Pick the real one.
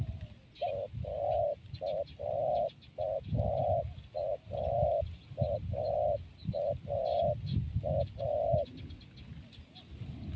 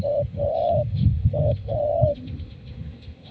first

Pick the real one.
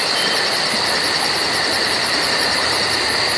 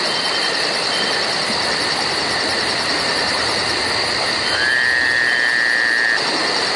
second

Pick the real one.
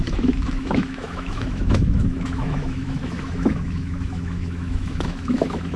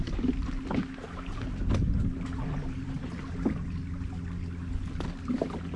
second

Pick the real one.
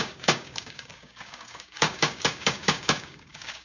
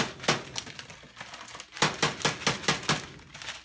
second